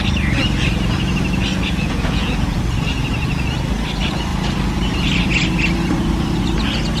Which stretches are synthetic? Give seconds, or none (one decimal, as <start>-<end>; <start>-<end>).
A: 1.5-2.6

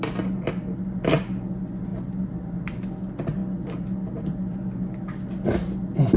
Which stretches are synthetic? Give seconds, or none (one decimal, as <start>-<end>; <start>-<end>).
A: none